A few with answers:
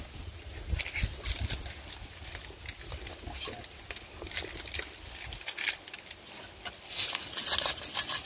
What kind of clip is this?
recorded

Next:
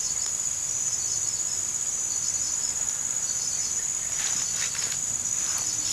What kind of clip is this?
recorded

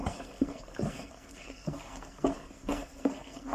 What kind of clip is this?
remade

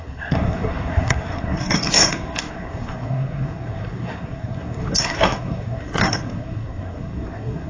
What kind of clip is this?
remade